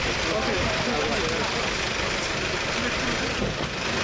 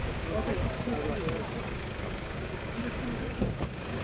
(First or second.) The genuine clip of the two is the first